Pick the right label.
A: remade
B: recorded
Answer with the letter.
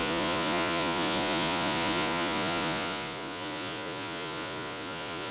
A